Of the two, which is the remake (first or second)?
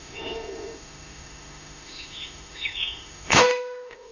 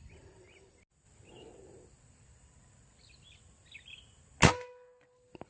first